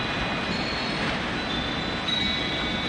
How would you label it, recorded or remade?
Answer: recorded